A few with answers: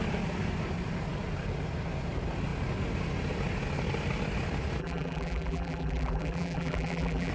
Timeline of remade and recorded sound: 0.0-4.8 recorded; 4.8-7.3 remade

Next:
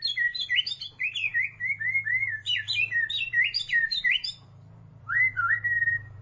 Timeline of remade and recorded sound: 0.0-6.2 remade

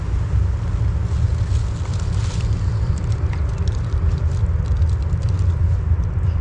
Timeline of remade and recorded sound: 0.0-1.9 recorded; 1.9-4.2 remade; 4.2-6.4 recorded

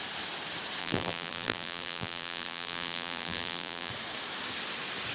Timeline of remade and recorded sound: 0.0-0.8 recorded; 0.8-3.9 remade; 3.9-5.1 recorded

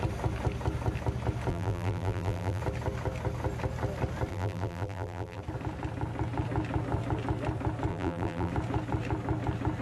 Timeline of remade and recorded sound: 0.0-1.5 recorded; 1.5-2.6 remade; 2.6-4.3 recorded; 4.3-5.4 remade; 5.4-7.9 recorded; 7.9-8.5 remade; 8.5-9.8 recorded

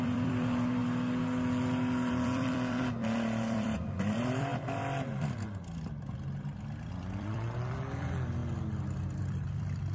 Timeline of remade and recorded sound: 0.0-0.8 remade; 0.8-2.1 recorded; 2.1-4.5 remade; 4.5-6.9 recorded; 6.9-8.4 remade; 8.4-9.2 recorded; 9.2-9.9 remade

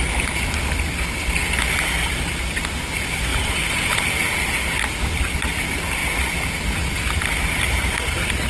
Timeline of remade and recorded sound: 0.0-3.3 recorded; 3.3-4.1 remade; 4.1-8.5 recorded